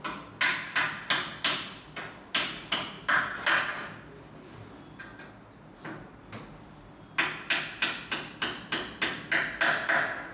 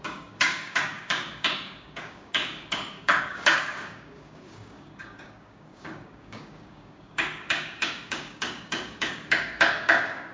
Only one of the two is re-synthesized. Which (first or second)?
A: second